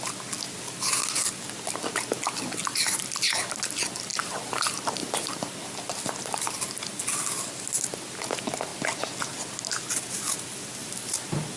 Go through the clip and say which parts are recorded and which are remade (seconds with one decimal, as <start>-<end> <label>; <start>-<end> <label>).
0.0-4.1 recorded; 4.1-4.6 remade; 4.6-5.0 recorded; 5.0-7.0 remade; 7.0-10.8 recorded; 10.8-11.6 remade

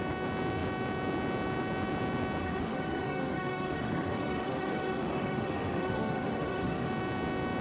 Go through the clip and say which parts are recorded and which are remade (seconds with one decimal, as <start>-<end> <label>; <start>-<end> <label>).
0.0-2.4 recorded; 2.4-6.9 remade; 6.9-7.6 recorded

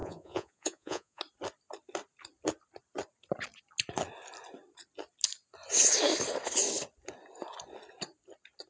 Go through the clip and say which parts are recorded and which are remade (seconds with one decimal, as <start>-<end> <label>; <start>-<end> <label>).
0.0-1.2 remade; 1.2-8.7 recorded

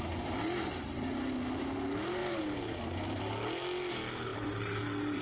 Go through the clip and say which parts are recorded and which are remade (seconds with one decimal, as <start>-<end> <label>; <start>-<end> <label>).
0.0-2.2 recorded; 2.2-3.2 remade; 3.2-4.3 recorded; 4.3-5.2 remade

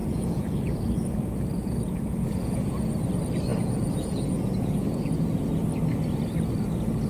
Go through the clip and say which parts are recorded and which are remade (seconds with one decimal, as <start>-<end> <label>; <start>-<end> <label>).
0.0-0.8 remade; 0.8-1.6 recorded; 1.6-2.9 remade; 2.9-3.5 recorded; 3.5-5.5 remade; 5.5-7.1 recorded

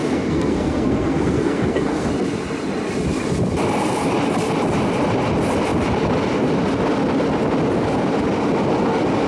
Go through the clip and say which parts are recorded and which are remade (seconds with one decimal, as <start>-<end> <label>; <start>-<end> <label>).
0.0-2.1 remade; 2.1-9.3 recorded

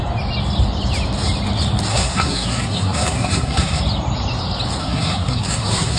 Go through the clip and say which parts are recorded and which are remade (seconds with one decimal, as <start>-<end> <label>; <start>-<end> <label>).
0.0-1.9 recorded; 1.9-3.8 remade; 3.8-4.8 recorded; 4.8-6.0 remade